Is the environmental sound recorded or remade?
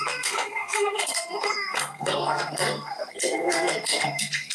remade